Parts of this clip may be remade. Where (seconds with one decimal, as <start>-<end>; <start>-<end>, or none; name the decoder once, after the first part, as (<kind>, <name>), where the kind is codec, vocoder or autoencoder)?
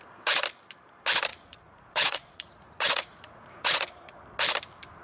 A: 1.3-4.2 (vocoder, Vocos)